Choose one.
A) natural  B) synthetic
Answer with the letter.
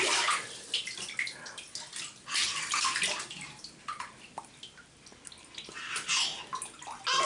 A